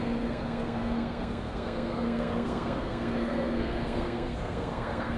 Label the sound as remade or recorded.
remade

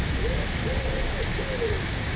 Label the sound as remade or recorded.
recorded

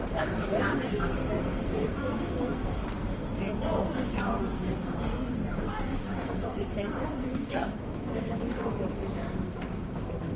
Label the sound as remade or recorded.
remade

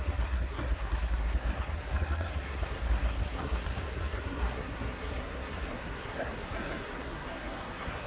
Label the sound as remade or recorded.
remade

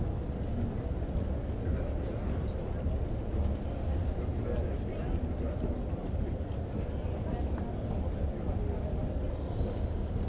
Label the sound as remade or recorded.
recorded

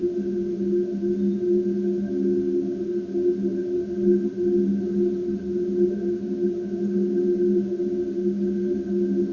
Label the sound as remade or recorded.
recorded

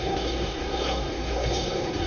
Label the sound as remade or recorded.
remade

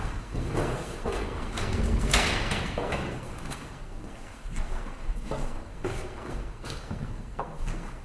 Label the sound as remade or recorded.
remade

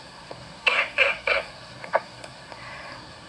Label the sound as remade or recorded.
remade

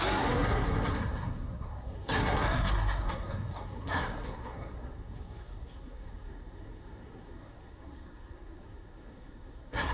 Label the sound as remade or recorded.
remade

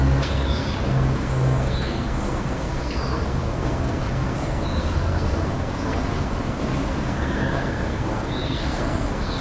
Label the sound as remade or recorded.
remade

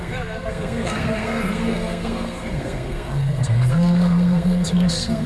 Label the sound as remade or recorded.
remade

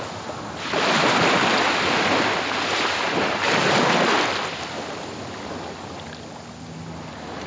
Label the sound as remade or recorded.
recorded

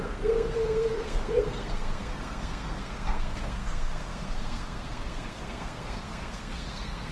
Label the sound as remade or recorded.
remade